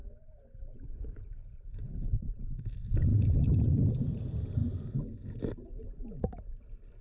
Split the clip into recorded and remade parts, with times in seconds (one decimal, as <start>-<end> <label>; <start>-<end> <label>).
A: 0.0-1.2 remade; 1.2-7.0 recorded